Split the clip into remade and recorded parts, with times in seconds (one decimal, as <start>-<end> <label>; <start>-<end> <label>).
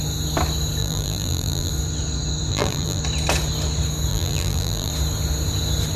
0.0-0.8 recorded; 0.8-1.7 remade; 1.7-2.5 recorded; 2.5-3.0 remade; 3.0-4.1 recorded; 4.1-4.9 remade; 4.9-6.0 recorded